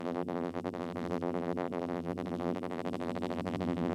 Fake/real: fake